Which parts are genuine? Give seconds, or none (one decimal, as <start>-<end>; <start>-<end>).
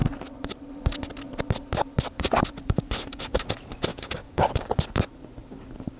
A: 0.0-3.9; 4.5-6.0